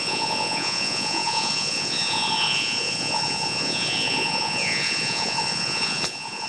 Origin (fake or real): fake